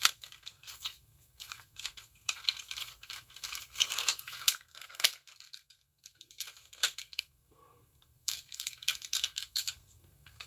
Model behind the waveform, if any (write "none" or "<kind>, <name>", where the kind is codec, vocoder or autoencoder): codec, SNAC